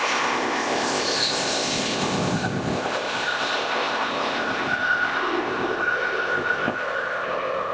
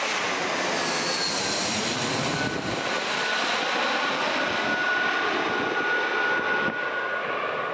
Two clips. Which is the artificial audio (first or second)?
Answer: first